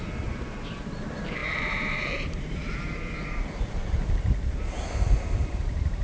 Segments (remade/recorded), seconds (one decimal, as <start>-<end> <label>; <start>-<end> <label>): 0.0-3.8 remade; 3.8-5.3 recorded; 5.3-6.0 remade